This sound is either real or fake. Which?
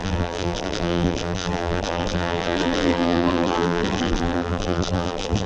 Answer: fake